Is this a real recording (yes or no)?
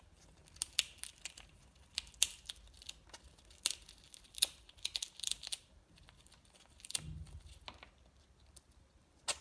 yes